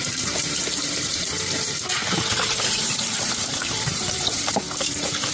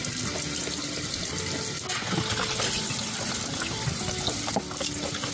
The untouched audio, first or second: second